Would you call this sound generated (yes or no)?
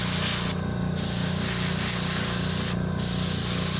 no